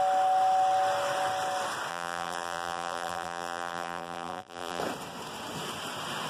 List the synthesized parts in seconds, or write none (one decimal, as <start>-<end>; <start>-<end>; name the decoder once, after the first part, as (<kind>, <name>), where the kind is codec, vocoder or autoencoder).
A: 1.9-4.8 (vocoder, BigVGAN v2)